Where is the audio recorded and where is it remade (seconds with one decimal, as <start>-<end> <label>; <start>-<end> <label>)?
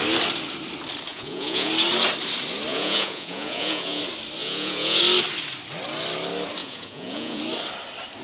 0.0-1.1 recorded; 1.1-1.7 remade; 1.7-2.7 recorded; 2.7-4.0 remade; 4.0-4.4 recorded; 4.4-5.0 remade; 5.0-6.6 recorded; 6.6-7.4 remade; 7.4-8.2 recorded